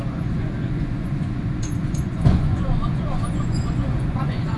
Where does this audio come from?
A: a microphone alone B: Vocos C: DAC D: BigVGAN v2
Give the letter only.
B